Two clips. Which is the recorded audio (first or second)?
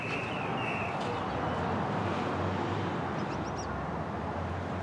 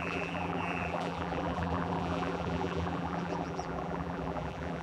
first